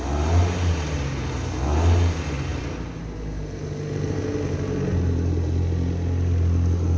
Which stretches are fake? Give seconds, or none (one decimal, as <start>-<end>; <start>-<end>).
none